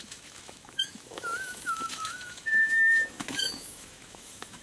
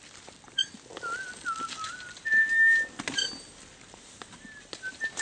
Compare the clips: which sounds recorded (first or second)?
second